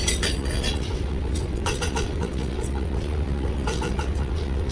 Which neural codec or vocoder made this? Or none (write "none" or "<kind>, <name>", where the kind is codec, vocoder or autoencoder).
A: vocoder, WaveNeXt